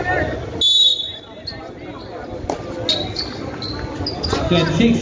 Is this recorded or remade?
recorded